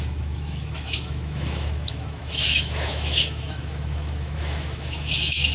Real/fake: fake